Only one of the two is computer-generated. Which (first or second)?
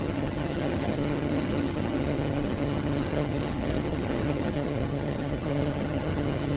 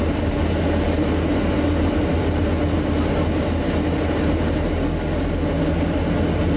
first